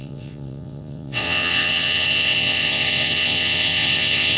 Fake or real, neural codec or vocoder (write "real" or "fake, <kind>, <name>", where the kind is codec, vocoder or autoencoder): fake, vocoder, WaveNeXt